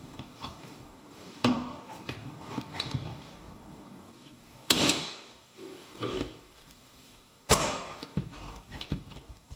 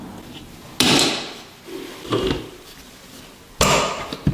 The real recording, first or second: second